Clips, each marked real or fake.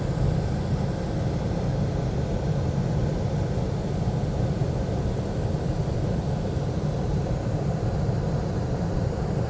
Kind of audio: real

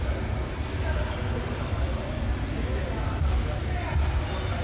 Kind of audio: real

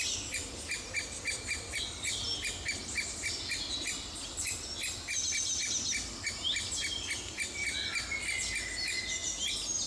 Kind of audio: real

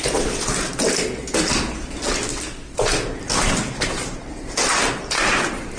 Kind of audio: real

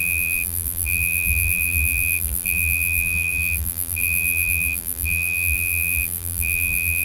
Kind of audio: fake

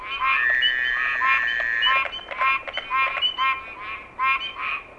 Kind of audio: real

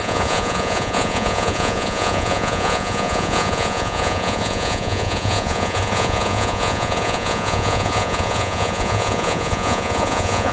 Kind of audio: fake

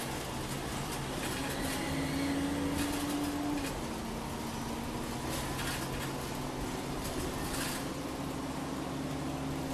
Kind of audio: real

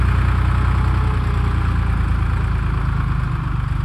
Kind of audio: real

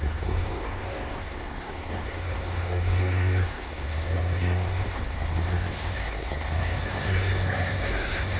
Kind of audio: fake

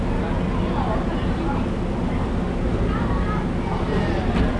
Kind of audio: real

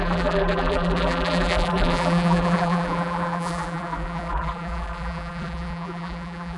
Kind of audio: fake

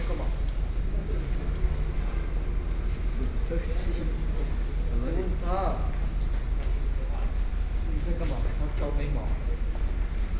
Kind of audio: real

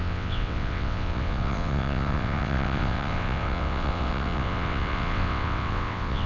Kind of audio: fake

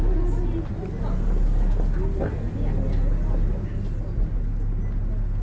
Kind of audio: real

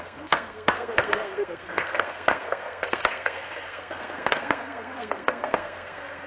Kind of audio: fake